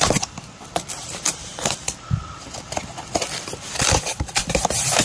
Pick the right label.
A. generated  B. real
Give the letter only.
A